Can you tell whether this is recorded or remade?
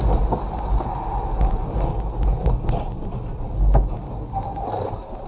recorded